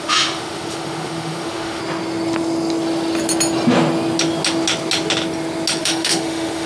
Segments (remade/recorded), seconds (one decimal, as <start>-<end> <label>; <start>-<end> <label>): 0.0-1.8 remade; 1.8-5.8 recorded; 5.8-6.7 remade